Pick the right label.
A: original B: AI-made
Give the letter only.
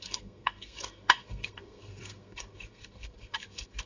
B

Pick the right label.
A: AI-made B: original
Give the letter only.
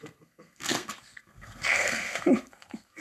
A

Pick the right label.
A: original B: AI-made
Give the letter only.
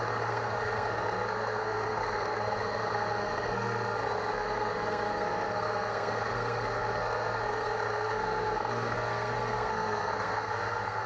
B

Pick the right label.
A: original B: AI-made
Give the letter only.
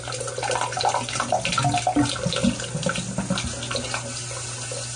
A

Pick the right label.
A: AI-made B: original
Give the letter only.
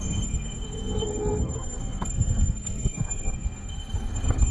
A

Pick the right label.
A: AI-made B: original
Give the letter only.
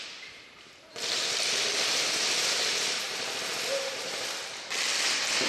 B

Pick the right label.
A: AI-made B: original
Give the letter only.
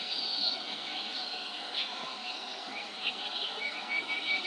A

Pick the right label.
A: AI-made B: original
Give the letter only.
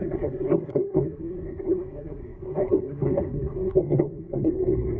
A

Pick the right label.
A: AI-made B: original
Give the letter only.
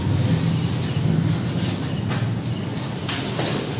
B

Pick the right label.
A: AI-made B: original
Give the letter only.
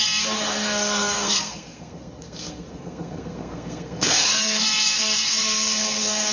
A